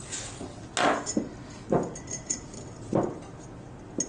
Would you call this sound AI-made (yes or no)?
no